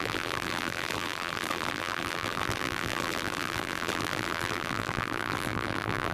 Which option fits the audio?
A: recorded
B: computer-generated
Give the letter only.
B